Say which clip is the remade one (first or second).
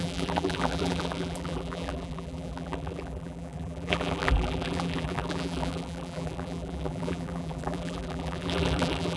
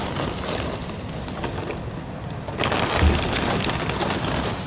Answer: first